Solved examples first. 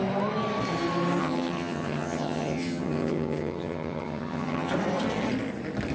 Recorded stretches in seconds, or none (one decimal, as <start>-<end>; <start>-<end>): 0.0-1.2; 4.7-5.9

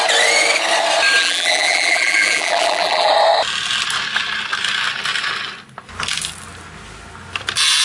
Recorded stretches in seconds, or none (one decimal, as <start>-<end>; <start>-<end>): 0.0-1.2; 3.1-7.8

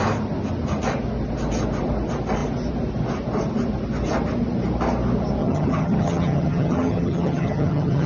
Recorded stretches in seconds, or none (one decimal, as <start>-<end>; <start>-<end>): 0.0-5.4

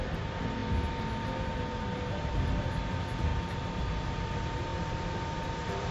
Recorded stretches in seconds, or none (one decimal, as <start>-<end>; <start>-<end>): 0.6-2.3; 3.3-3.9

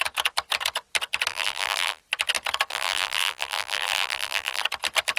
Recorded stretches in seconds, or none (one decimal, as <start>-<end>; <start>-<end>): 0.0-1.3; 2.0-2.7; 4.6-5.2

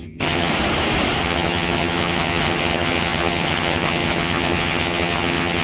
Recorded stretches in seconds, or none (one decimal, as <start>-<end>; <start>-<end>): 0.5-1.2